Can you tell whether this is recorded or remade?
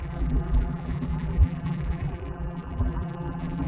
remade